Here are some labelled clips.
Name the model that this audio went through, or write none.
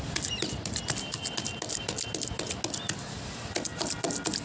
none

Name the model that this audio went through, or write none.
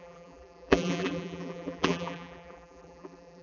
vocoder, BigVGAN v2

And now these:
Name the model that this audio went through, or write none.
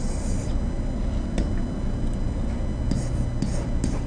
none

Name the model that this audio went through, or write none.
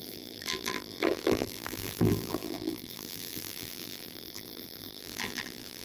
vocoder, BigVGAN v2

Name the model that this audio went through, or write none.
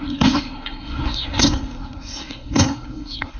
codec, SNAC